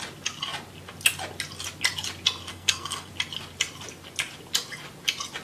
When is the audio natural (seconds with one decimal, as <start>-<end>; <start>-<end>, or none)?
0.0-2.5; 3.1-5.4

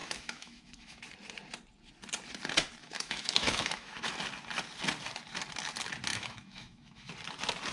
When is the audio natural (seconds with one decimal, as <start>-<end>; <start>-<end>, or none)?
1.0-2.8; 4.1-6.1; 7.1-7.7

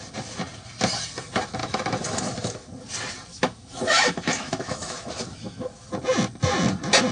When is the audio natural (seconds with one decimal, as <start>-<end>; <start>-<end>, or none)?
0.0-1.6; 2.7-3.3; 5.9-7.1

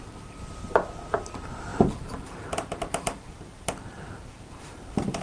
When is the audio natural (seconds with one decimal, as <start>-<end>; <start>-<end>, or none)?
none